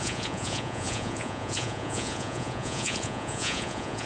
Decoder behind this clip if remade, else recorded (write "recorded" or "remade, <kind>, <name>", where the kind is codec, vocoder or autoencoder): remade, vocoder, Vocos